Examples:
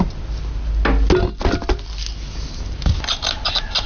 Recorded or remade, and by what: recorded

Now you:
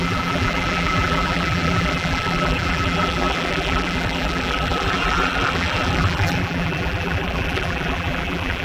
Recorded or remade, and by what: remade, vocoder, BigVGAN v2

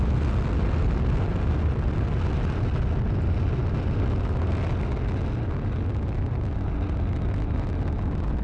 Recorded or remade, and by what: recorded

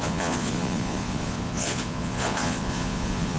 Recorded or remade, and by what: remade, vocoder, Vocos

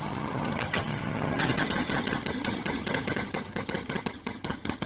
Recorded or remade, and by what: remade, vocoder, HiFi-GAN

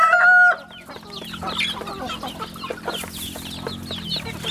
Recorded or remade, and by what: recorded